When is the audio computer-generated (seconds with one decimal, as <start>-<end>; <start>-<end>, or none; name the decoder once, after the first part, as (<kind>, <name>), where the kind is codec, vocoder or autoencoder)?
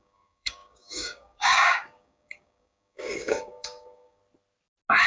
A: 0.0-4.2 (codec, DAC)